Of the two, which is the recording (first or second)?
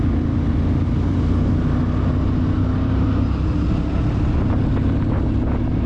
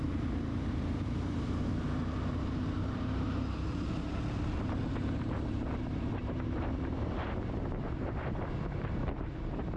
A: first